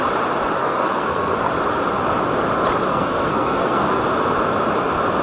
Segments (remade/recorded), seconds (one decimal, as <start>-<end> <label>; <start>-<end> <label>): 0.0-0.6 recorded; 0.6-1.4 remade; 1.4-2.9 recorded; 2.9-4.0 remade; 4.0-5.2 recorded